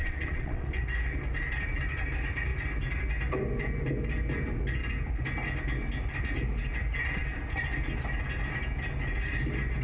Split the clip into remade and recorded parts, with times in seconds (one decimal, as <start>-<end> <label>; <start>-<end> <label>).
0.0-0.8 remade; 0.8-9.8 recorded